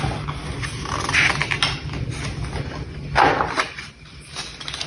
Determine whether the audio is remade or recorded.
recorded